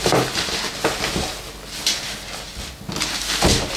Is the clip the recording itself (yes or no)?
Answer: yes